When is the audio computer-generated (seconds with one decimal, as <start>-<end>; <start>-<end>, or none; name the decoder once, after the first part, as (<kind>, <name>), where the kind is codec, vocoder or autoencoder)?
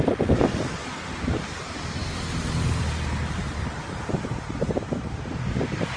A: none